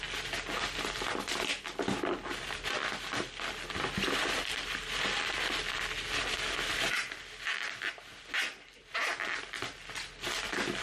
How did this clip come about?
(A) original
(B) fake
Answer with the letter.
A